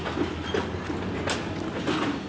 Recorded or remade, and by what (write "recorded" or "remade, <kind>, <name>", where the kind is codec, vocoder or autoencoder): recorded